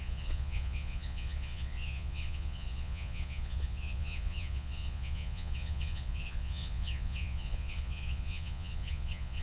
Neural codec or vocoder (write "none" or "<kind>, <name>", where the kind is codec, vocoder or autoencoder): vocoder, Vocos